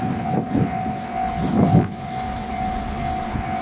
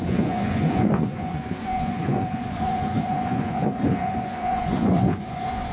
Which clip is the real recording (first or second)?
first